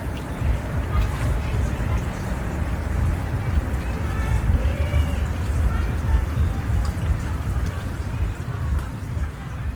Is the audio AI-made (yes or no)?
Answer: yes